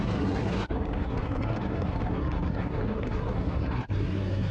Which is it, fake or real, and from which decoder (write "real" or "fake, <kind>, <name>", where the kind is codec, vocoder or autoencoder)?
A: fake, codec, SNAC